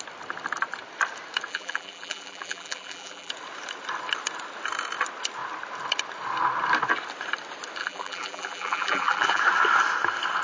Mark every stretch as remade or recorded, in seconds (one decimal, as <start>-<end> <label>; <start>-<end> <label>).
0.0-1.5 recorded; 1.5-3.3 remade; 3.3-7.8 recorded; 7.8-9.4 remade; 9.4-10.4 recorded